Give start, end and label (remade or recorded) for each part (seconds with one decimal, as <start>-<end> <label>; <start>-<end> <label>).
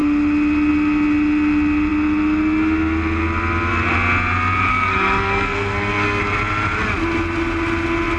0.0-4.7 recorded; 4.7-6.2 remade; 6.2-8.2 recorded